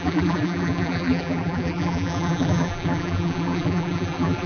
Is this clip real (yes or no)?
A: no